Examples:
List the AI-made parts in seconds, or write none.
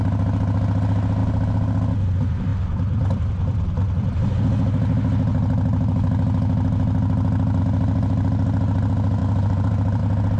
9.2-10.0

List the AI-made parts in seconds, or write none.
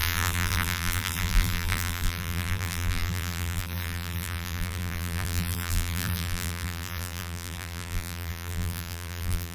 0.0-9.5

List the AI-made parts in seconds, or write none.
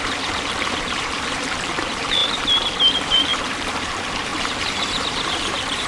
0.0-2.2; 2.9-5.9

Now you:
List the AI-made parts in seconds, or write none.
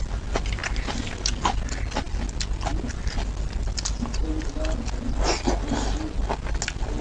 none